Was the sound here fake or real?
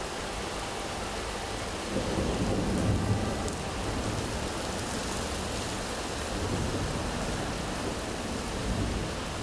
real